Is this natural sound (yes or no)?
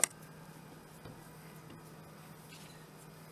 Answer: yes